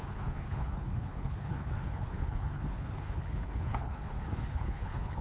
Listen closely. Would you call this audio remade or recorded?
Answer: remade